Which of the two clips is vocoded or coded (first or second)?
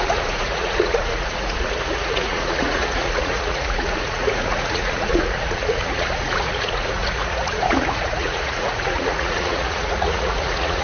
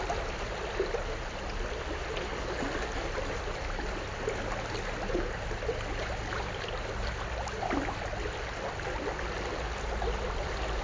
first